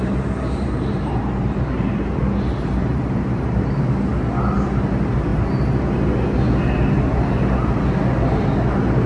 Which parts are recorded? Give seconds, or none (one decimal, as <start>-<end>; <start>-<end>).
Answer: 4.1-5.3; 5.8-9.1